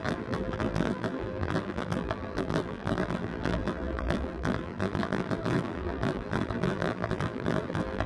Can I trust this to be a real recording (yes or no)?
no